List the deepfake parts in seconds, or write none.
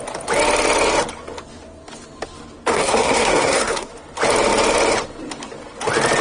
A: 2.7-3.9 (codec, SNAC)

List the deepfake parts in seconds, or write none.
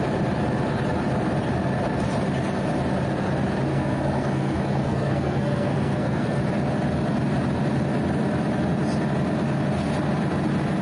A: 3.7-6.4 (codec, SNAC)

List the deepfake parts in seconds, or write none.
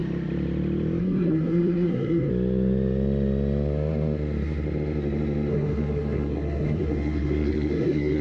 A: 1.0-2.3 (codec, SNAC); 5.5-8.2